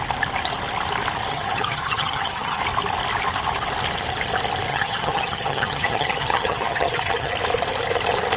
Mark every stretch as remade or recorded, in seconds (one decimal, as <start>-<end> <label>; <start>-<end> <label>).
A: 0.0-1.3 recorded; 1.3-2.6 remade; 2.6-4.7 recorded; 4.7-7.3 remade; 7.3-8.4 recorded